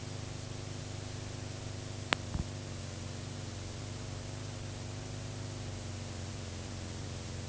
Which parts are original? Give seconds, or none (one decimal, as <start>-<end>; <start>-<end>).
0.0-7.5